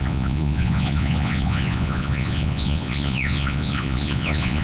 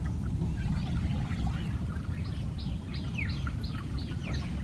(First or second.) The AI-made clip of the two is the first